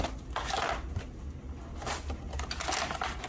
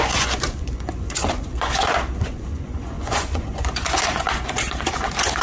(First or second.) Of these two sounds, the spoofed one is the second